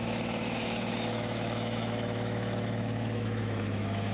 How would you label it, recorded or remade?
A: remade